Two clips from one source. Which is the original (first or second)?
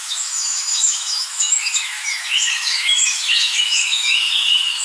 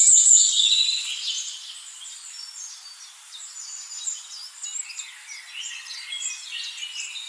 second